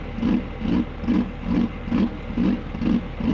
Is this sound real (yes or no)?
yes